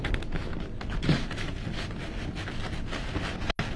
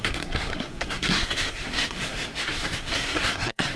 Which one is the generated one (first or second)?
second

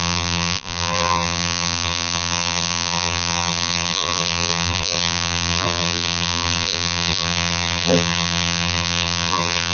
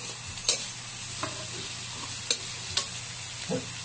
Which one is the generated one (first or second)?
first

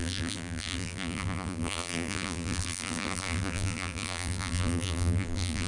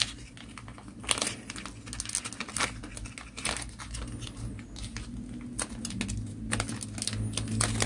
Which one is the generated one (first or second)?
first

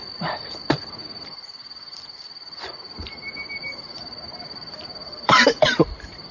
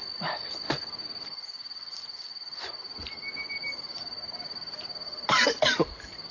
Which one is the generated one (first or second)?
first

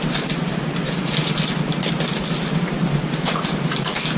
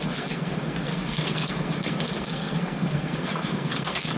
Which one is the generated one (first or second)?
second